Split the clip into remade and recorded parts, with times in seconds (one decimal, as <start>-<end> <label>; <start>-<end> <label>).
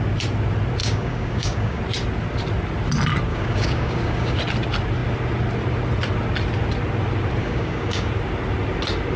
0.0-0.8 recorded; 0.8-1.8 remade; 1.8-3.3 recorded; 3.3-4.4 remade; 4.4-7.4 recorded; 7.4-8.1 remade; 8.1-9.2 recorded